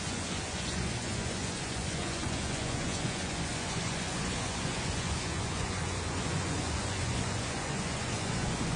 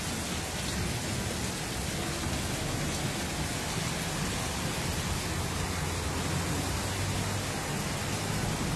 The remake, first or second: first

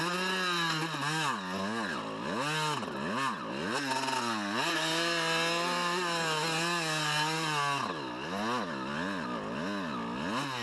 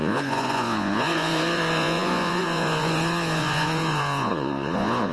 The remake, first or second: second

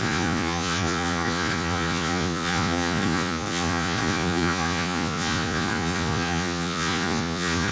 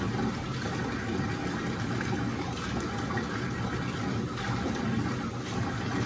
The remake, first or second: first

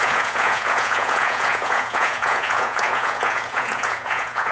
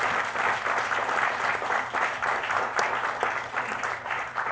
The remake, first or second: first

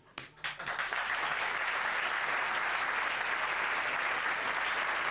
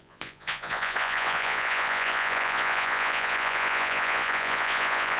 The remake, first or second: second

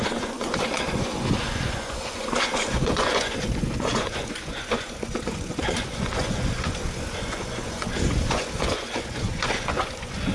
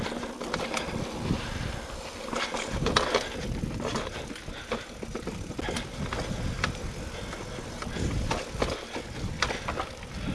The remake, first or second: first